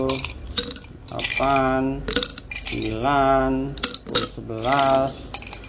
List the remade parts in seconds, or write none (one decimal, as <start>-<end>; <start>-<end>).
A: none